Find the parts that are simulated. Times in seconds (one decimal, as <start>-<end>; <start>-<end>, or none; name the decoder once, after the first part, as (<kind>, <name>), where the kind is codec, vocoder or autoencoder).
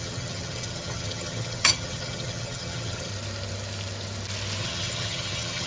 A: 0.0-3.1 (vocoder, HiFi-GAN); 4.6-5.7